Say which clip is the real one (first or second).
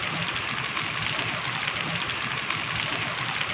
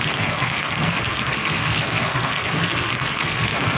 first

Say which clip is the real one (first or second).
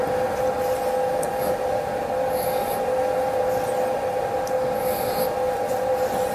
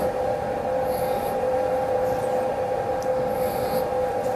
first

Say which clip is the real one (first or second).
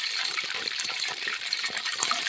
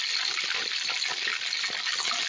second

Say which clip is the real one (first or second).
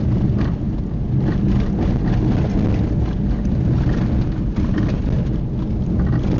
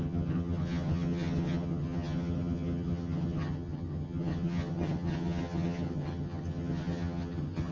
first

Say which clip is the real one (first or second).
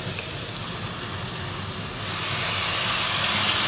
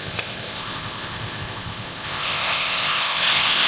first